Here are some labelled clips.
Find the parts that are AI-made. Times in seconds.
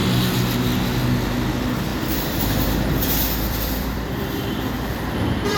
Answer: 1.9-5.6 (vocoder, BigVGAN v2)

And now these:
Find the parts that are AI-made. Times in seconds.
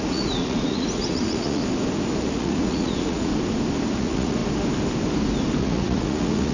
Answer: 0.0-1.6 (vocoder, Vocos); 2.2-3.3; 3.9-4.4; 5.6-6.5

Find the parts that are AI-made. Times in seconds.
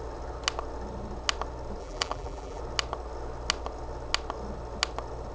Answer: 1.8-2.6 (vocoder, BigVGAN v2)